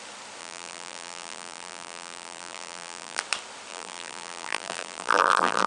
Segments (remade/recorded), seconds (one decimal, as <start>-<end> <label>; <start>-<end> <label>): 0.0-0.4 recorded; 0.4-3.2 remade; 3.2-3.7 recorded; 3.7-5.7 remade